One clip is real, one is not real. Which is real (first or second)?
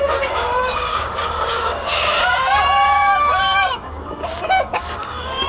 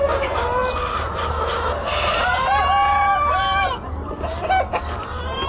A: second